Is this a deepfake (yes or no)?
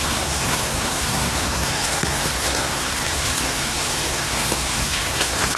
yes